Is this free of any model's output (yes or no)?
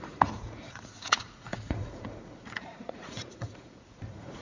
no